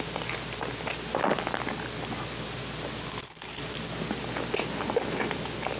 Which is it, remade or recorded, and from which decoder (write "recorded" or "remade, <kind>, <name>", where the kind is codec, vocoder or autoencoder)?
recorded